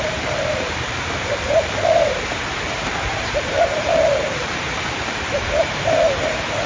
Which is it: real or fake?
fake